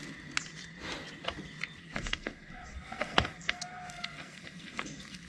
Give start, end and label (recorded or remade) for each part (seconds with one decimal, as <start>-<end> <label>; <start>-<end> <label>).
0.0-1.8 recorded; 1.8-5.3 remade